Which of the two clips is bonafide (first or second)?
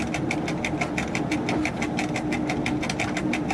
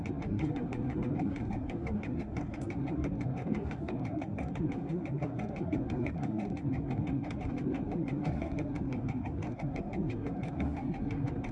first